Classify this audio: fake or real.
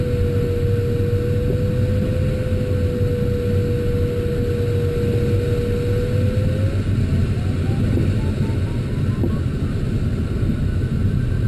real